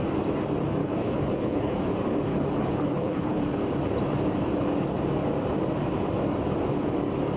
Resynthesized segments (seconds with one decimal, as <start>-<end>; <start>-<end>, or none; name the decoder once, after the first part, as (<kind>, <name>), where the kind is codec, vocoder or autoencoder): 0.8-1.9 (codec, HILCodec); 2.3-3.6